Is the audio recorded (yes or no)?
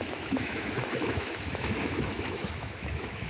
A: no